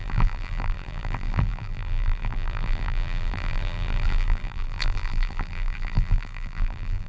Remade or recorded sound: remade